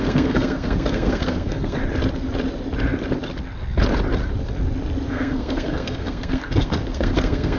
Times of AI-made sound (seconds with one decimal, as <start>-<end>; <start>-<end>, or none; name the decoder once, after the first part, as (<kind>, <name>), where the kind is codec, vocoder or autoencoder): 0.0-1.8 (codec, SNAC); 5.1-7.6